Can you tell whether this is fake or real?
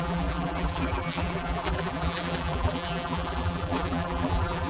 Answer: fake